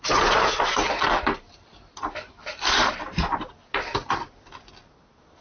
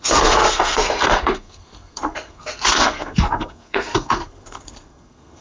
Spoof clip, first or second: second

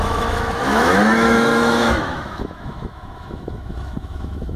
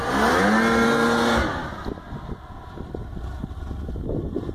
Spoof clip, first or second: first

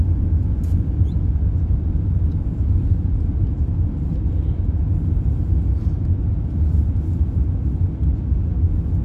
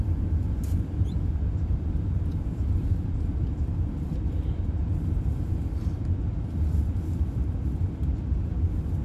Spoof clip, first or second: second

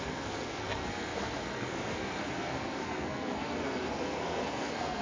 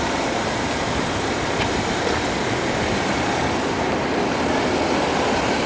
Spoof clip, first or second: first